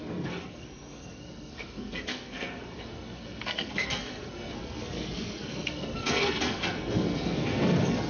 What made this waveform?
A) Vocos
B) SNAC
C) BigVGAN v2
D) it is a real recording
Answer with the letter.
B